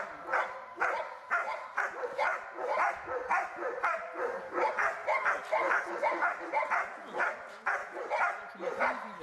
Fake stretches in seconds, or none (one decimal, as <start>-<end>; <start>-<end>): 2.3-6.4